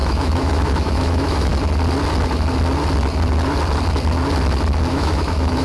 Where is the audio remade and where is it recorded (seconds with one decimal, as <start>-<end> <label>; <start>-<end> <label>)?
0.0-1.5 remade; 1.5-4.9 recorded; 4.9-5.6 remade

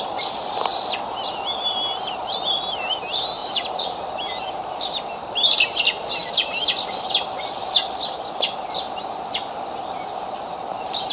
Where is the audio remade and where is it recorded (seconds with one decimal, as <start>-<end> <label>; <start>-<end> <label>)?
0.0-3.4 recorded; 3.4-4.8 remade; 4.8-11.1 recorded

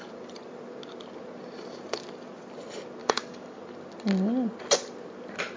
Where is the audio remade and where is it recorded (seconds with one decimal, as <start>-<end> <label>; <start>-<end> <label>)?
0.0-3.0 recorded; 3.0-3.6 remade; 3.6-5.6 recorded

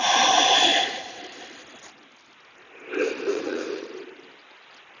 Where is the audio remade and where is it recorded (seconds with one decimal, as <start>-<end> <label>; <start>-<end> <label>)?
0.0-0.7 recorded; 0.7-1.2 remade; 1.2-3.3 recorded; 3.3-4.0 remade; 4.0-5.0 recorded

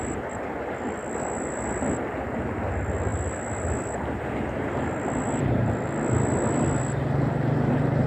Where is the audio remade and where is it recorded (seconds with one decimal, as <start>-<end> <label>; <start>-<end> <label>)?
0.0-8.1 recorded

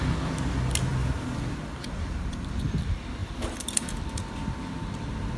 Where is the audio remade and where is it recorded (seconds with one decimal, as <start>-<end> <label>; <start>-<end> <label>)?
0.0-0.9 recorded; 0.9-2.5 remade; 2.5-3.2 recorded; 3.2-4.0 remade; 4.0-5.4 recorded